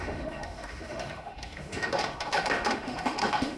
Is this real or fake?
fake